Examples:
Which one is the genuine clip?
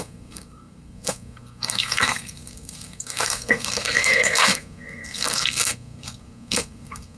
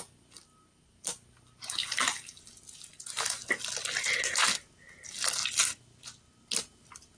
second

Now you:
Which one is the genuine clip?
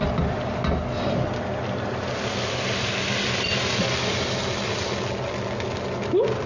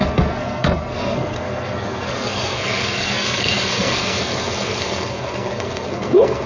first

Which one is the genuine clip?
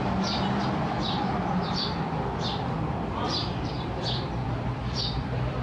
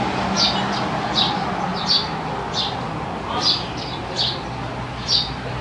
second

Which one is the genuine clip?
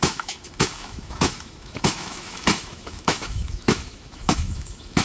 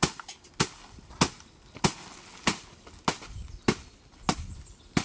second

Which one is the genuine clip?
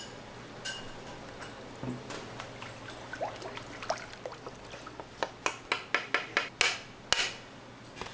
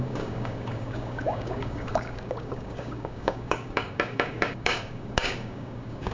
first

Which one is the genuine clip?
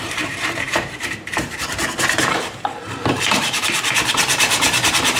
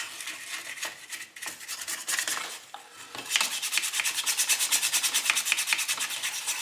second